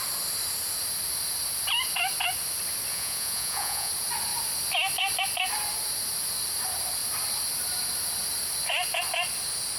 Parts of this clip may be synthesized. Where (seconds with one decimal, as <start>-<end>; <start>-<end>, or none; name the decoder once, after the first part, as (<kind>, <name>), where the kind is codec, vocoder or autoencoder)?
2.9-3.9 (vocoder, Vocos)